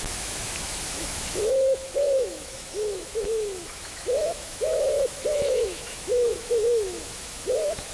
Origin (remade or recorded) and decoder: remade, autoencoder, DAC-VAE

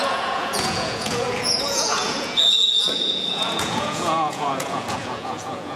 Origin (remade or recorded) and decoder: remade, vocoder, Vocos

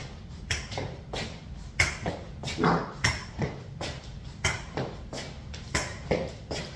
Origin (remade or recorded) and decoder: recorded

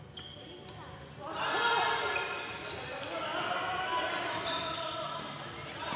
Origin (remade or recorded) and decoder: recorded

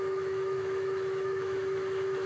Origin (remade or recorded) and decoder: remade, autoencoder, DAC-VAE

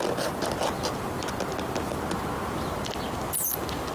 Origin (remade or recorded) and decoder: recorded